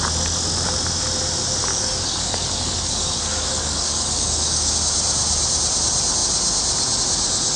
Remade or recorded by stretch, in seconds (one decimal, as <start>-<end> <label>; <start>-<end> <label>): 0.0-1.7 recorded; 1.7-4.7 remade; 4.7-7.6 recorded

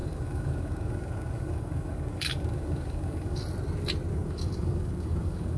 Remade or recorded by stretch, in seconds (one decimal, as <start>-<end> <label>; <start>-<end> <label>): 0.0-3.4 remade; 3.4-4.1 recorded; 4.1-5.6 remade

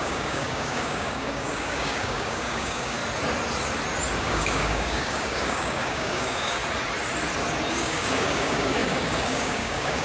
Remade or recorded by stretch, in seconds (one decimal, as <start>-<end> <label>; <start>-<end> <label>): 0.0-3.0 remade; 3.0-4.2 recorded; 4.2-6.6 remade; 6.6-7.7 recorded; 7.7-10.0 remade

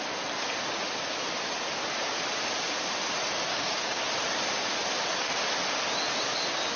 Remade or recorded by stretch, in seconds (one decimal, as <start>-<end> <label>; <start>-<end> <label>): 0.0-3.5 recorded; 3.5-4.0 remade; 4.0-6.8 recorded

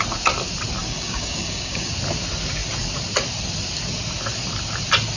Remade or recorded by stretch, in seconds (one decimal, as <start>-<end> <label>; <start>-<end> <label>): 0.0-0.8 recorded; 0.8-1.9 remade; 1.9-5.2 recorded

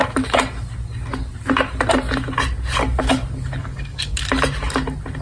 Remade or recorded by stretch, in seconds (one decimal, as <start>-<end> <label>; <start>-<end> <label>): 0.0-3.6 recorded; 3.6-4.2 remade; 4.2-5.2 recorded

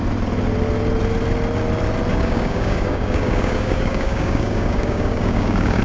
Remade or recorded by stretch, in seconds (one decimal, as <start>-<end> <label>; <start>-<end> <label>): 0.0-2.1 recorded; 2.1-5.8 remade